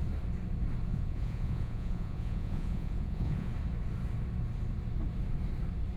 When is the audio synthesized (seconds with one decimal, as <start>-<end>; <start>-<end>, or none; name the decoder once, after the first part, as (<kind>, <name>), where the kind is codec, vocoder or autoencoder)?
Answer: 0.9-3.5 (vocoder, Vocos)